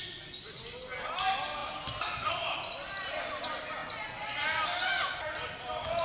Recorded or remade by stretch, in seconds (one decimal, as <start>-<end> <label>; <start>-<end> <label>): 0.0-1.6 recorded; 1.6-3.4 remade; 3.4-6.0 recorded